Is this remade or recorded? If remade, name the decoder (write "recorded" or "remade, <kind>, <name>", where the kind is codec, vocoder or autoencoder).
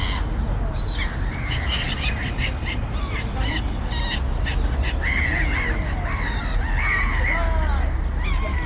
recorded